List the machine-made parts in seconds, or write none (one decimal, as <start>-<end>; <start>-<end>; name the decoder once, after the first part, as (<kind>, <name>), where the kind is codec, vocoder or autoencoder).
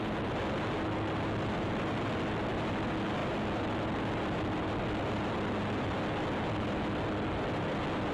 none